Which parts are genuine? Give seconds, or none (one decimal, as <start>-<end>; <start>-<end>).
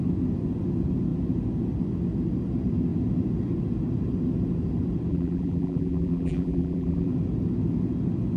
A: 0.0-5.1; 7.1-8.4